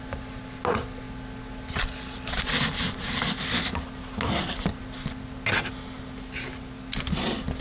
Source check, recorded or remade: recorded